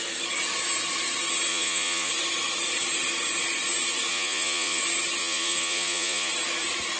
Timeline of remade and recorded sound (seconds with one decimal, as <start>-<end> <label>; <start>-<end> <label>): 0.0-1.5 recorded; 1.5-2.1 remade; 2.1-4.1 recorded; 4.1-4.8 remade; 4.8-5.2 recorded; 5.2-6.3 remade; 6.3-7.0 recorded